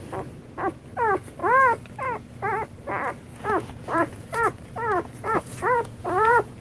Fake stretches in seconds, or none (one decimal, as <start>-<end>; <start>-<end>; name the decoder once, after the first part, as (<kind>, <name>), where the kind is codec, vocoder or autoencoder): 3.3-6.6 (vocoder, Vocos)